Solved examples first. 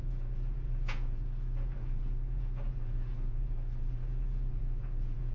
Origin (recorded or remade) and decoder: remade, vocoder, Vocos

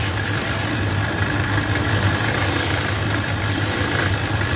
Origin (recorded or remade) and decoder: remade, vocoder, BigVGAN v2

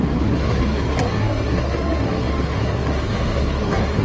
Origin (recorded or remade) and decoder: remade, codec, SNAC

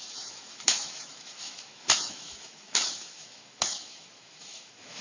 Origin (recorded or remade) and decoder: remade, autoencoder, DAC-VAE